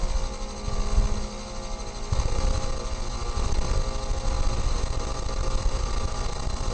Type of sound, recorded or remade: recorded